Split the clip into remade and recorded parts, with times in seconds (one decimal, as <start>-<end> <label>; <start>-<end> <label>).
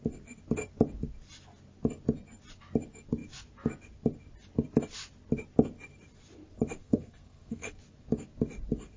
0.0-6.8 recorded; 6.8-7.7 remade; 7.7-9.0 recorded